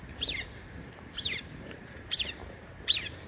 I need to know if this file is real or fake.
fake